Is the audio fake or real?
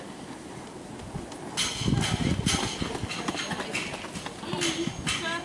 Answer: real